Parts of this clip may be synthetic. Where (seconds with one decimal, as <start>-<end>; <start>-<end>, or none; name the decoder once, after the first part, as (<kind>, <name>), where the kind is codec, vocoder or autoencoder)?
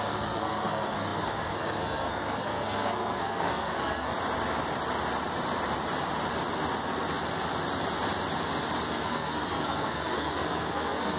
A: 0.0-4.1 (codec, SNAC); 8.9-11.2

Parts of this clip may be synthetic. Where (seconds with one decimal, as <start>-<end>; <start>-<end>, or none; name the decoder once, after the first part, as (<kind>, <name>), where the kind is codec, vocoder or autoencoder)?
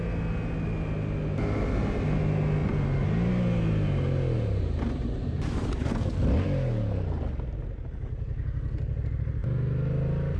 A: none